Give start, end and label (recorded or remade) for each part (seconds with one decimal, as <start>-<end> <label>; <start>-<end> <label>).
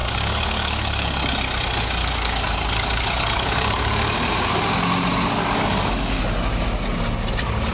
0.0-1.3 remade; 1.3-2.0 recorded; 2.0-4.3 remade; 4.3-5.4 recorded; 5.4-6.2 remade; 6.2-7.7 recorded